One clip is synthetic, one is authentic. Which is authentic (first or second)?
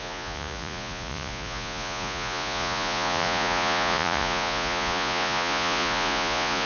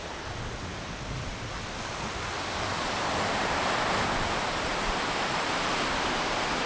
second